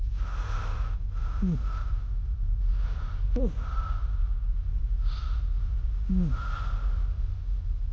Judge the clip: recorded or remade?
recorded